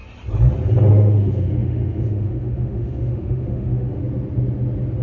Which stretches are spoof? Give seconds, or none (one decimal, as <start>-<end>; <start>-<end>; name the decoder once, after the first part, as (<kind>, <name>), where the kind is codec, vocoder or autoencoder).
0.9-4.0 (autoencoder, DAC-VAE)